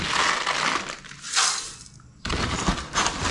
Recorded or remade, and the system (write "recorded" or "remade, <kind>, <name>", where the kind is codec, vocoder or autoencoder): recorded